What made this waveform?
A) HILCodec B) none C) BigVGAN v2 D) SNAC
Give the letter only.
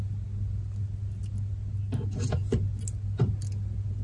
B